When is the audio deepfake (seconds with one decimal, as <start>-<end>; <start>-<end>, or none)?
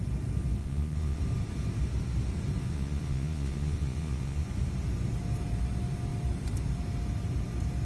0.6-1.2; 2.7-4.5